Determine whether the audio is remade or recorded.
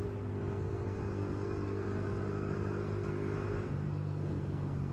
remade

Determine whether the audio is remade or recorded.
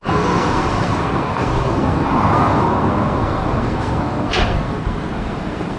remade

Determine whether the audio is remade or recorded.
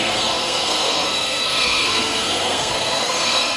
remade